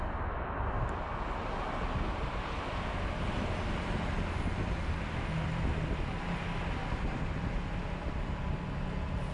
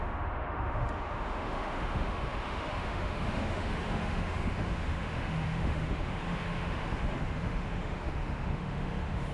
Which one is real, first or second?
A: first